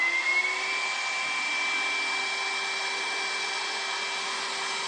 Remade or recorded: recorded